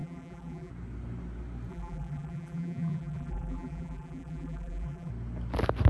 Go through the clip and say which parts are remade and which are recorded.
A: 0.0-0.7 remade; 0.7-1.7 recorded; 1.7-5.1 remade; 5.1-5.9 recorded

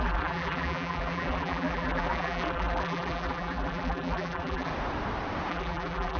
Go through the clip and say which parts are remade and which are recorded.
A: 0.0-4.7 remade; 4.7-5.5 recorded; 5.5-6.2 remade

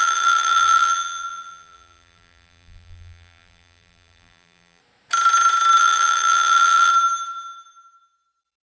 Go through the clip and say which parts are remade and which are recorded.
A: 0.0-4.8 remade; 4.8-5.8 recorded; 5.8-6.9 remade; 6.9-8.6 recorded

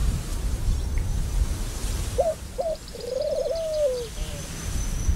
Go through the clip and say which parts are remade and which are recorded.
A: 0.0-3.1 remade; 3.1-5.2 recorded

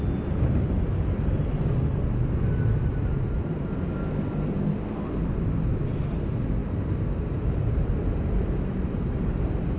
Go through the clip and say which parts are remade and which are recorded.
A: 0.0-3.1 recorded; 3.1-3.8 remade; 3.8-6.6 recorded; 6.6-9.8 remade

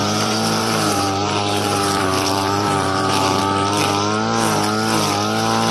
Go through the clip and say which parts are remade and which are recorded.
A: 0.0-3.4 remade; 3.4-5.7 recorded

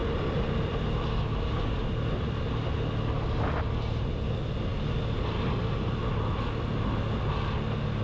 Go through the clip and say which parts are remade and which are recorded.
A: 0.0-1.0 remade; 1.0-8.0 recorded

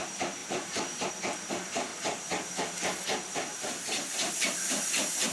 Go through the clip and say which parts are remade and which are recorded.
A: 0.0-1.9 remade; 1.9-4.4 recorded; 4.4-5.3 remade